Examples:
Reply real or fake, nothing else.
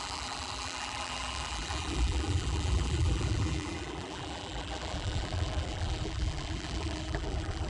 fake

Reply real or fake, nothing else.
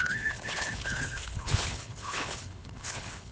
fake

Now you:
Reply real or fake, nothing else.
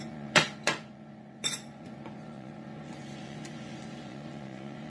fake